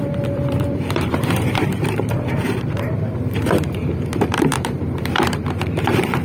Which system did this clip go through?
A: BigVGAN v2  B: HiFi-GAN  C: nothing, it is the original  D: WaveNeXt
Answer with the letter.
A